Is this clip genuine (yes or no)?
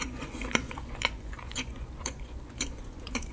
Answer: no